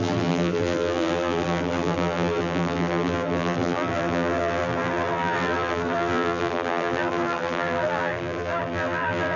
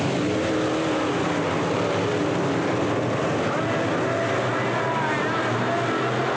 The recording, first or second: second